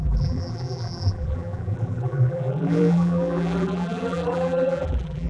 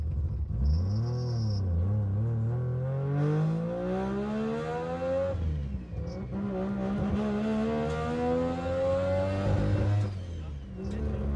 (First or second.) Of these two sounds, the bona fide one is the second